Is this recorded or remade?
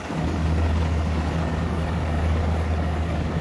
remade